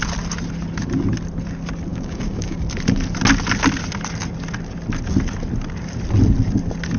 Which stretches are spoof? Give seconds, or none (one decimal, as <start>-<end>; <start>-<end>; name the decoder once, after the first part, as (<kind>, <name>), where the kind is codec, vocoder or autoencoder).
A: 1.9-2.6 (codec, DAC)